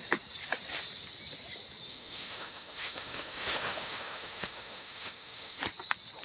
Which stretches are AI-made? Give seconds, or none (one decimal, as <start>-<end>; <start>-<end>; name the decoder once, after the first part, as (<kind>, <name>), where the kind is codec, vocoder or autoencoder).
1.9-5.6 (autoencoder, DAC-VAE)